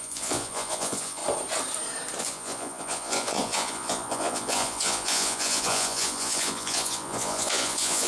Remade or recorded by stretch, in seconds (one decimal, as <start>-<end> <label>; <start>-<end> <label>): 0.0-1.2 remade; 1.2-2.2 recorded; 2.2-8.1 remade